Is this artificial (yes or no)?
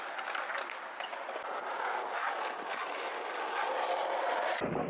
no